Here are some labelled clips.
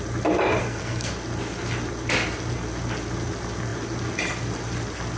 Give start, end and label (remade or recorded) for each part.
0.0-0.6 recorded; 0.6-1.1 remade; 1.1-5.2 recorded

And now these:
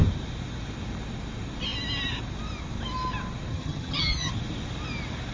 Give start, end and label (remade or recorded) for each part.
0.0-3.5 recorded; 3.5-4.3 remade; 4.3-5.3 recorded